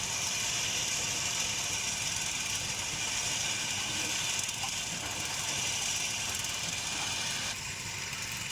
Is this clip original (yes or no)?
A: yes